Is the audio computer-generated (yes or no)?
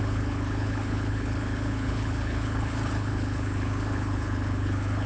yes